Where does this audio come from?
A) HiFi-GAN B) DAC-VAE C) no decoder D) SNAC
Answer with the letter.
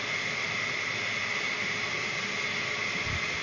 C